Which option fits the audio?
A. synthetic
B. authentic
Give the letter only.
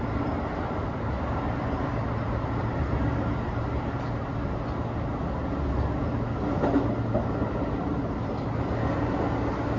B